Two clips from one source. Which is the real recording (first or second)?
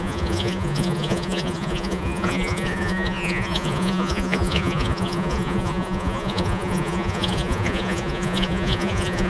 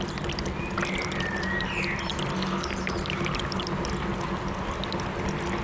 second